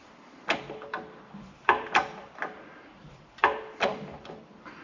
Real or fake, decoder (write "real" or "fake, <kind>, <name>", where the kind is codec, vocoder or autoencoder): fake, vocoder, BigVGAN v2